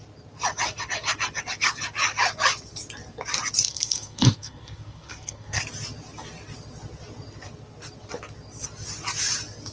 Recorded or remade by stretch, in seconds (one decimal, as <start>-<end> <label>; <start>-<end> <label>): 0.0-3.7 recorded; 3.7-5.6 remade; 5.6-9.7 recorded